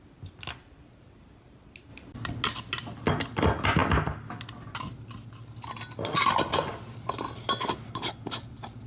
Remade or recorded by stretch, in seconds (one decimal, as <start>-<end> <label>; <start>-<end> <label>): 0.0-8.9 recorded